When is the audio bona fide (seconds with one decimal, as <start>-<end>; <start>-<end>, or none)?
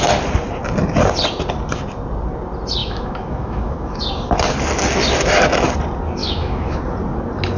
0.0-2.8; 4.0-6.2; 6.8-7.6